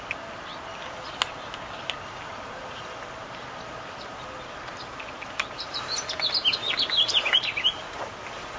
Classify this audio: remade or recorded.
recorded